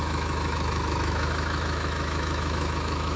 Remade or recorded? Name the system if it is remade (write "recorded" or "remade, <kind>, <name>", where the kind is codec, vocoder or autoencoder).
remade, autoencoder, DAC-VAE